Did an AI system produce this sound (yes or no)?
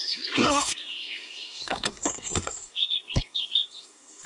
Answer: yes